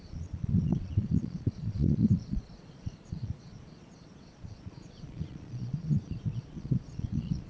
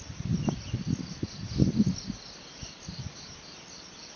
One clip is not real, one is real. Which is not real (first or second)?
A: first